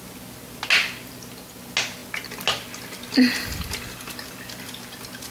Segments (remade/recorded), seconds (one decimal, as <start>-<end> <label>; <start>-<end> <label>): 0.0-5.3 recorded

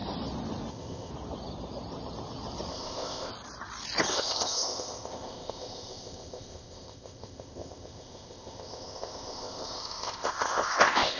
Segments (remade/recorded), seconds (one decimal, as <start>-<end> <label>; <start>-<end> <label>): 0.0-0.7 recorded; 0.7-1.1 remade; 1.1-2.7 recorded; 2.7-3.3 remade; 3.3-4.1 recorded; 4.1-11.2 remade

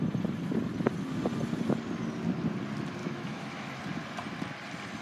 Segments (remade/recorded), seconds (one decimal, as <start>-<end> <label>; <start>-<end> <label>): 0.0-3.0 recorded; 3.0-3.8 remade; 3.8-5.0 recorded

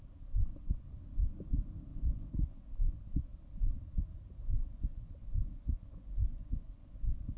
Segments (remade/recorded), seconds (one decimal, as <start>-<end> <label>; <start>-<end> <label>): 0.0-1.9 recorded; 1.9-2.6 remade; 2.6-4.4 recorded; 4.4-7.4 remade

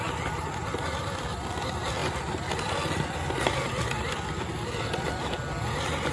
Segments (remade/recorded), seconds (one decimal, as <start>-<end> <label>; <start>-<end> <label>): 0.0-6.1 recorded

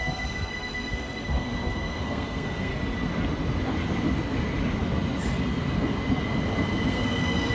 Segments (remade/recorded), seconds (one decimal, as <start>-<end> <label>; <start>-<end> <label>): 0.0-2.7 remade; 2.7-6.9 recorded; 6.9-7.5 remade

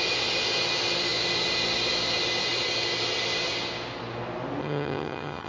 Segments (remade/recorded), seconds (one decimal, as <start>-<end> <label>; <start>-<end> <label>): 0.0-4.6 recorded; 4.6-5.5 remade

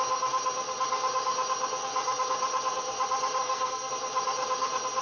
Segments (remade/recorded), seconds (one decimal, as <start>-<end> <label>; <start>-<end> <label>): 0.0-3.4 recorded; 3.4-3.9 remade; 3.9-5.0 recorded